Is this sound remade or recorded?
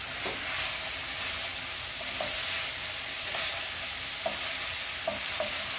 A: recorded